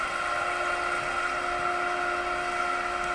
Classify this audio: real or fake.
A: real